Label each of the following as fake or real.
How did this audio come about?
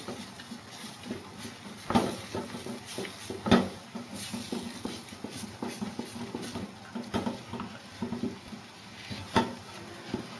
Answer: real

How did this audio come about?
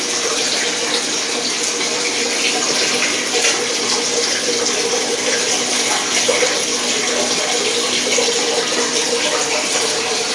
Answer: real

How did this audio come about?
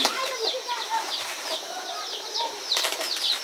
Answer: fake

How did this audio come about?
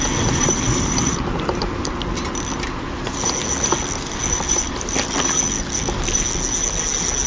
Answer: real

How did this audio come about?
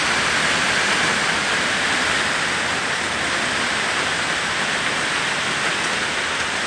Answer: real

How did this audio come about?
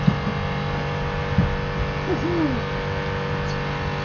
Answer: real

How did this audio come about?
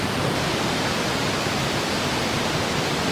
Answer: real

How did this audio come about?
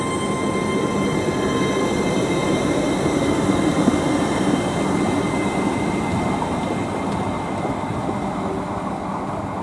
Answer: real